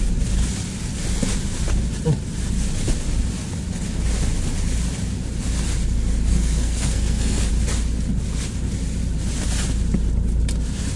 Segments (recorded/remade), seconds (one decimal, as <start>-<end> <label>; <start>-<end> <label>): 0.0-6.3 recorded; 6.3-7.5 remade; 7.5-11.0 recorded